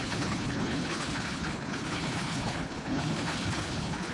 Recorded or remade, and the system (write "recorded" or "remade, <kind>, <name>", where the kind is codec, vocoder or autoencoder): remade, codec, HILCodec